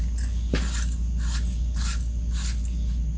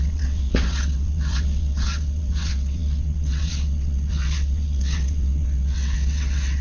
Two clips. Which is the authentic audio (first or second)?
first